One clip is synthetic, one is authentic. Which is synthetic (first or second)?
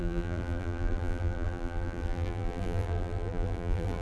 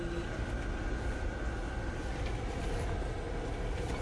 first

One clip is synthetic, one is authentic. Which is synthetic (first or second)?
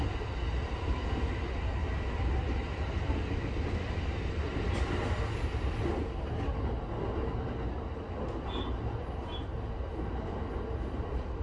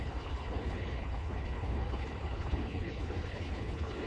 second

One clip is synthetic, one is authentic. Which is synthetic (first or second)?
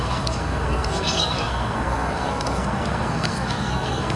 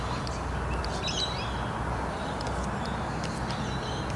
first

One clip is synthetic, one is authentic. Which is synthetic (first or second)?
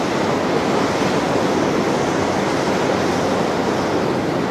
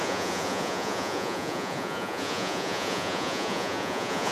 second